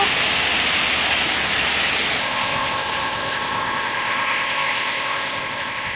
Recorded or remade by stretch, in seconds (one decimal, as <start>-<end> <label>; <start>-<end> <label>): 0.0-2.2 recorded; 2.2-6.0 remade